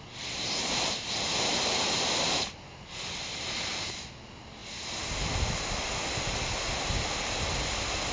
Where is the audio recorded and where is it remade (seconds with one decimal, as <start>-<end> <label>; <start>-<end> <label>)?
0.0-8.1 recorded